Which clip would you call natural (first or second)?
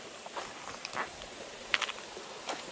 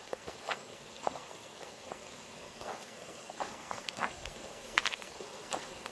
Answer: first